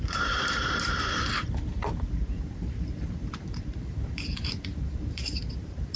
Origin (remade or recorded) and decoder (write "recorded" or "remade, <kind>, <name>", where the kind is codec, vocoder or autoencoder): remade, vocoder, BigVGAN v2